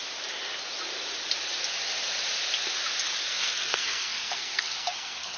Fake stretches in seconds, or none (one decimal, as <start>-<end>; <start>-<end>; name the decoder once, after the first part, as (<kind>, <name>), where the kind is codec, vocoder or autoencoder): 3.2-5.4 (codec, SNAC)